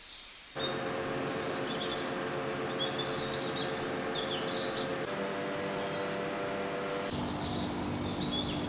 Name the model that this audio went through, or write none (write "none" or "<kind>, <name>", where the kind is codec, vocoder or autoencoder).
none